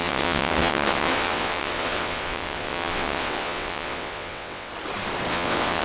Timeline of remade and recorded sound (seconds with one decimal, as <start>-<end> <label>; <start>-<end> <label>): 0.0-4.7 remade; 4.7-5.3 recorded; 5.3-5.8 remade